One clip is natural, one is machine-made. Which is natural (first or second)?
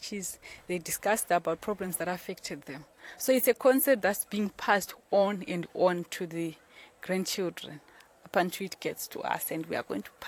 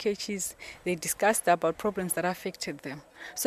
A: second